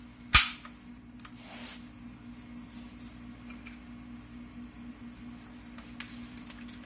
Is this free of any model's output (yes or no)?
yes